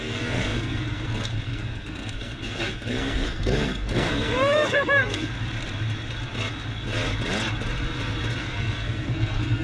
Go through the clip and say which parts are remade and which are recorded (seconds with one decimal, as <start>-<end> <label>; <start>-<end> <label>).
0.0-5.3 remade; 5.3-8.4 recorded; 8.4-9.6 remade